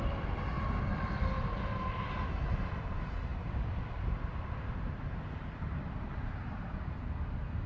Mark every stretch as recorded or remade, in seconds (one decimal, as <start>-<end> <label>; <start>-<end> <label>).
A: 0.0-3.3 recorded; 3.3-7.1 remade; 7.1-7.7 recorded